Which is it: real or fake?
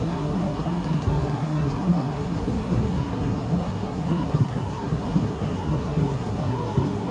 fake